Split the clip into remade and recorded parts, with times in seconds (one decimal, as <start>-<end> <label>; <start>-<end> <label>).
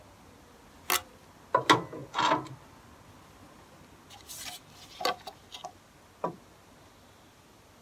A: 0.0-7.8 recorded